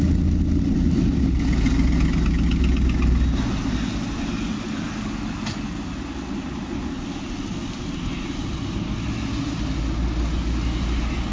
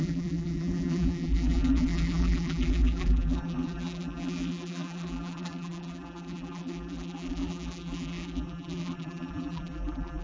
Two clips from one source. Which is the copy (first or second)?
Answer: second